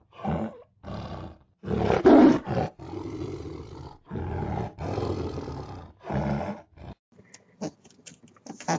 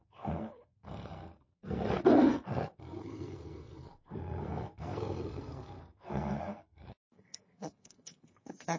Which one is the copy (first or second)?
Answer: second